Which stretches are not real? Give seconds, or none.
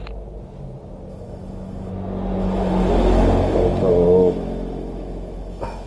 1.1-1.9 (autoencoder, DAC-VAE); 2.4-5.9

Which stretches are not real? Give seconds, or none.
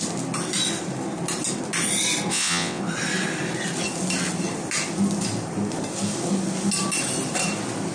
2.3-2.8 (vocoder, WaveNeXt)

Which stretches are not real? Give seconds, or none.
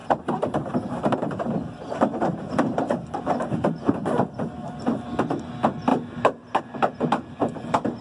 0.0-4.8 (vocoder, BigVGAN v2); 5.9-6.6